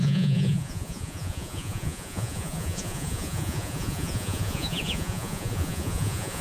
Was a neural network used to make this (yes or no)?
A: yes